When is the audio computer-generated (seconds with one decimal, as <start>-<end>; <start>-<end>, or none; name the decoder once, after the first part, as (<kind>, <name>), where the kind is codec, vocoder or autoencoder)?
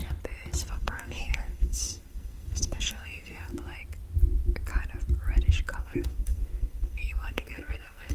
0.7-3.5 (codec, SNAC); 5.8-8.1